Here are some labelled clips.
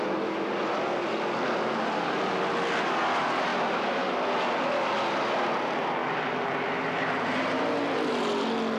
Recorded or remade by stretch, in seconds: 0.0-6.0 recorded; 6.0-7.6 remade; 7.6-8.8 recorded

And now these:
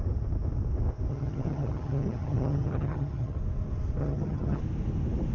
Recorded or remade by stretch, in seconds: 0.0-1.1 recorded; 1.1-3.4 remade; 3.4-4.0 recorded; 4.0-4.6 remade; 4.6-5.3 recorded

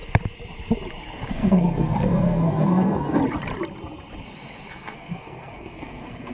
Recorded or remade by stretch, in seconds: 0.0-1.3 recorded; 1.3-3.2 remade; 3.2-4.7 recorded; 4.7-6.3 remade

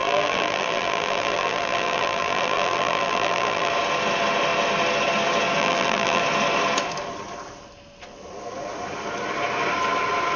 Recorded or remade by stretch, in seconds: 0.0-3.7 remade; 3.7-5.6 recorded; 5.6-6.2 remade; 6.2-10.4 recorded